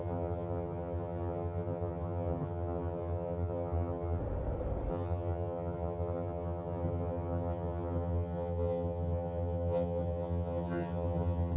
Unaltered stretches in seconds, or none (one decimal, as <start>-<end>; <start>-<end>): 4.2-4.9